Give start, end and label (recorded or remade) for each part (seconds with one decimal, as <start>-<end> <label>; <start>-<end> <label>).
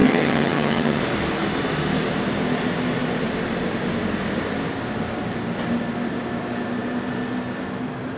0.0-1.0 remade; 1.0-8.2 recorded